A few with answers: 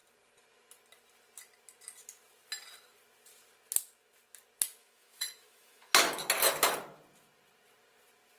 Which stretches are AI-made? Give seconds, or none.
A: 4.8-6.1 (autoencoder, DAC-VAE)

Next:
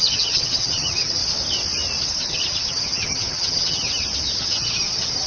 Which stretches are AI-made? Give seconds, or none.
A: 0.0-1.2 (vocoder, HiFi-GAN); 2.1-3.9; 4.4-5.3

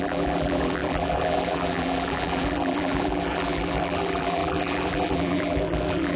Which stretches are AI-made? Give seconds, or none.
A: 0.0-6.2 (vocoder, BigVGAN v2)

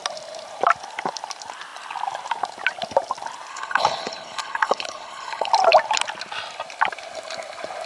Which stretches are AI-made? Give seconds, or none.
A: 3.5-5.5 (codec, HILCodec)

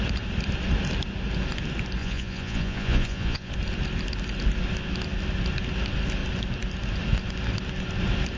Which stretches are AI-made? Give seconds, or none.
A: 2.0-3.5 (vocoder, Vocos)

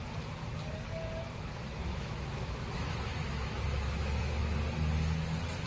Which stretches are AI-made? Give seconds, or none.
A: 1.8-4.6 (autoencoder, DAC-VAE)

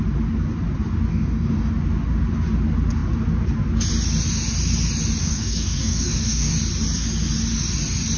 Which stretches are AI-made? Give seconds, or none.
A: 1.1-1.7 (codec, DAC); 5.2-6.5